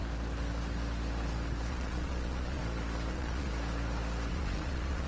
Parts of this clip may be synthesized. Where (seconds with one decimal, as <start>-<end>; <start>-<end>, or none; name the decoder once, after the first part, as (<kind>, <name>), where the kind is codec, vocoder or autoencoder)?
1.7-2.6 (vocoder, Vocos); 3.1-3.5; 4.3-5.1

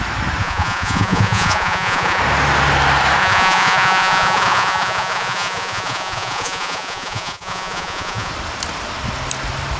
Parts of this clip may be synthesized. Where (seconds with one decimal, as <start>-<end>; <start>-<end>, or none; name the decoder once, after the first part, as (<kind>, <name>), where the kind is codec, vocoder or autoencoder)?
0.4-2.2 (vocoder, Vocos); 3.2-8.3

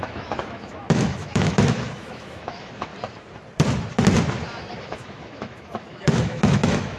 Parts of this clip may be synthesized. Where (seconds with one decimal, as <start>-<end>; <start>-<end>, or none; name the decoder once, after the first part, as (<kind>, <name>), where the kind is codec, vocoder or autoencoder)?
0.0-2.9 (autoencoder, DAC-VAE); 4.8-7.0